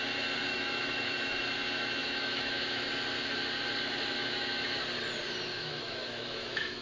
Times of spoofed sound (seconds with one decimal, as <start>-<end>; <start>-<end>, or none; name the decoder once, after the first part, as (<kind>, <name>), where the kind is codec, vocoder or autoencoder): 0.5-1.4 (autoencoder, DAC-VAE); 2.0-2.9; 4.2-4.8; 5.5-6.8